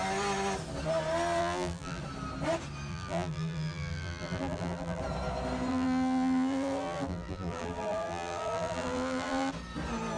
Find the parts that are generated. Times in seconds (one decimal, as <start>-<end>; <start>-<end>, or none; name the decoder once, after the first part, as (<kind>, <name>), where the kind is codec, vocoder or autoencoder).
1.4-2.0 (vocoder, BigVGAN v2); 2.9-5.0; 5.7-9.5